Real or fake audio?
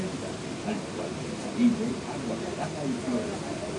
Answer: real